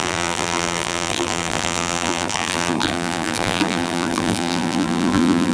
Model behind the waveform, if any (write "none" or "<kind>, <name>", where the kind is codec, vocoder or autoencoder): vocoder, BigVGAN v2